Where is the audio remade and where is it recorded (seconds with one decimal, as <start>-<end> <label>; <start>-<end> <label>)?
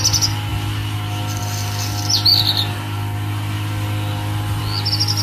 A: 0.0-5.2 recorded